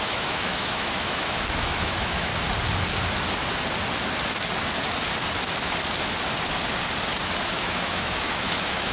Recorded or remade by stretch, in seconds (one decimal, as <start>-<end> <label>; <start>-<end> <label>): 0.0-2.3 remade; 2.3-7.4 recorded; 7.4-8.9 remade